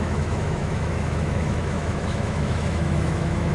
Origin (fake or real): fake